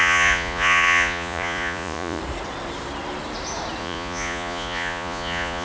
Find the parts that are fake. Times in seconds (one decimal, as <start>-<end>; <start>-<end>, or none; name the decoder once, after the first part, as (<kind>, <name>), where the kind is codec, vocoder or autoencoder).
0.0-2.2 (vocoder, Vocos); 3.8-5.6

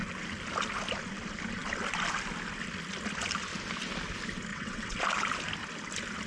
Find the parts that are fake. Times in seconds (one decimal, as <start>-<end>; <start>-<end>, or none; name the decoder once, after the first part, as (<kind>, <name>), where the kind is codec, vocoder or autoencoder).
4.5-5.0 (vocoder, WaveNeXt)

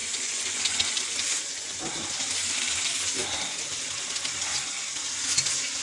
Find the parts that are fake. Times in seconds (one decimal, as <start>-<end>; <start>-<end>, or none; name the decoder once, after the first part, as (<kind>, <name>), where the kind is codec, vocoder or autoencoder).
0.0-1.8 (vocoder, Vocos)

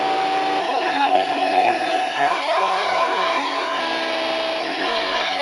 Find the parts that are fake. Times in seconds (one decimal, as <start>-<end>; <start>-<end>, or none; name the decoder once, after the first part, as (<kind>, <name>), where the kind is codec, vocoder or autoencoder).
0.6-3.8 (codec, SNAC); 4.6-5.4

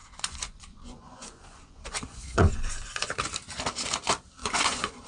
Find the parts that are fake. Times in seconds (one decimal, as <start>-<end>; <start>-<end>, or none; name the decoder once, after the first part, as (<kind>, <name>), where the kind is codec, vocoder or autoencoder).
0.0-3.1 (vocoder, Vocos); 4.4-5.1

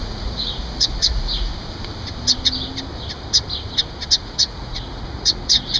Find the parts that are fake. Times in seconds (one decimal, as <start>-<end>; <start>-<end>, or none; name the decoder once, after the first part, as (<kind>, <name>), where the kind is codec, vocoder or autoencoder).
0.0-1.5 (vocoder, Vocos); 4.2-5.8

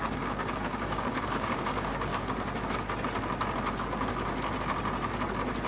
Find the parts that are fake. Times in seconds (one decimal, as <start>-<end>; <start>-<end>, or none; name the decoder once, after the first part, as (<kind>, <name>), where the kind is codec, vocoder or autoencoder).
0.0-2.1 (codec, DAC)

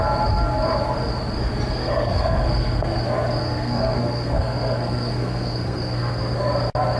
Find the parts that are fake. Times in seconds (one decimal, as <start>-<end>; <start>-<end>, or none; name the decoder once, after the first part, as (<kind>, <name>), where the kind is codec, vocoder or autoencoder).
1.8-3.0 (codec, SNAC); 3.4-6.2